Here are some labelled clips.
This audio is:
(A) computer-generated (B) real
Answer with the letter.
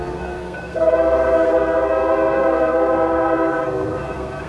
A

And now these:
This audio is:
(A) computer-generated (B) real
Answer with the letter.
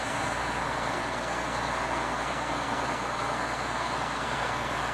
A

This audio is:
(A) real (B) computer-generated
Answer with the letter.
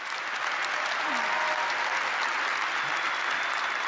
A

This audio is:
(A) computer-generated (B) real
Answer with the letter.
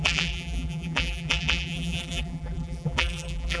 A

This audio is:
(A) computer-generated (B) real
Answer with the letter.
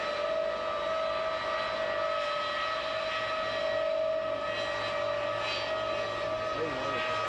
B